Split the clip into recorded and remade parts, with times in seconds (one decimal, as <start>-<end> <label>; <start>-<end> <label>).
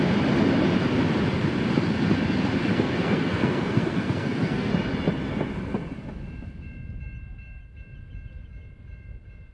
0.0-2.7 recorded; 2.7-4.7 remade; 4.7-9.5 recorded